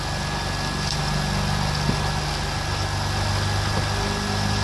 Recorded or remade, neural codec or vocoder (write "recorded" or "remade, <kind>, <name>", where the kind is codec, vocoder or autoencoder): recorded